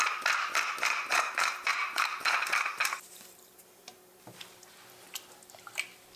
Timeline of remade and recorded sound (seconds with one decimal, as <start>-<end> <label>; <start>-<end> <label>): 0.0-1.1 recorded; 1.1-4.6 remade; 4.6-6.2 recorded